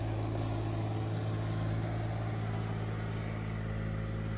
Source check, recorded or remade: recorded